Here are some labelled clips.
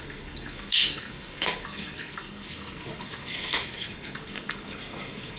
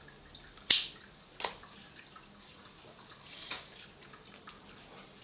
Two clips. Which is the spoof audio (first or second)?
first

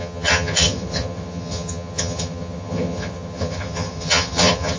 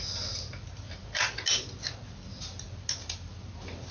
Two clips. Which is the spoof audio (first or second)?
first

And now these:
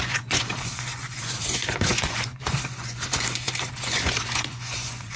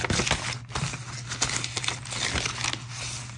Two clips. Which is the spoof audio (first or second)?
first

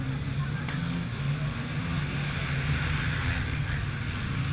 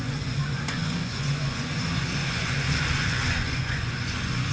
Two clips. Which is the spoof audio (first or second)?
second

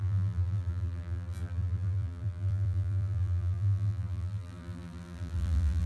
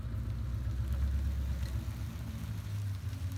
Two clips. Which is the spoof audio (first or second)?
first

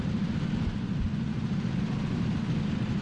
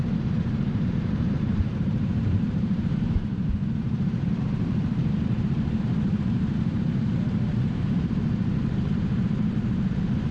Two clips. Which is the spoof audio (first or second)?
second